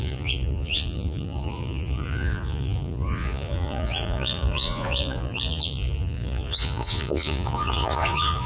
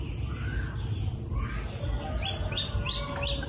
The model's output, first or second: first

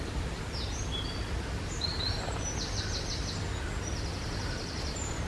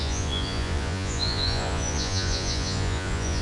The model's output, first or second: second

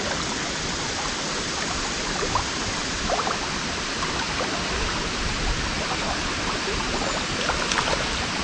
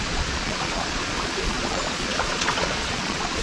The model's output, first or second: second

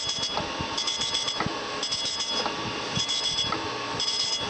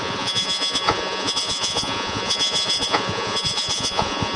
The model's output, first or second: second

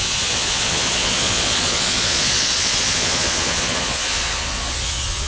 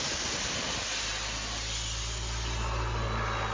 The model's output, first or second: first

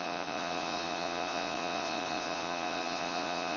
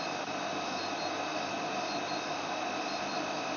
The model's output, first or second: first